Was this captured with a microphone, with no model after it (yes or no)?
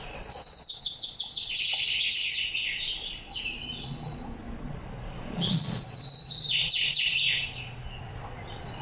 no